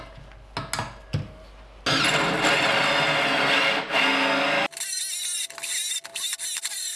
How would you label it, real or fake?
real